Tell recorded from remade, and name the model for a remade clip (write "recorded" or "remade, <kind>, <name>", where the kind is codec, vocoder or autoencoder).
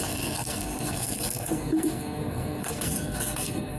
remade, codec, SNAC